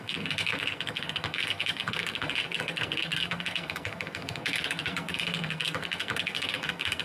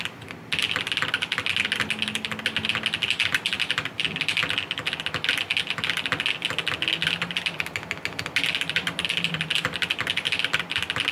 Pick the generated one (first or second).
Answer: first